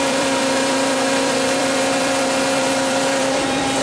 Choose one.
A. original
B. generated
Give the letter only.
B